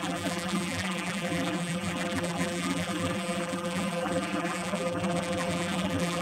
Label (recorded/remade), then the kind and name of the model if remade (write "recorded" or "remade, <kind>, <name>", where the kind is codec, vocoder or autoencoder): remade, vocoder, BigVGAN v2